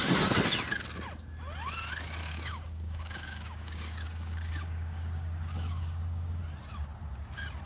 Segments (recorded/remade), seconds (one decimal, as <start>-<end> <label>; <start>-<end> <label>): 0.0-2.2 recorded; 2.2-6.4 remade; 6.4-7.7 recorded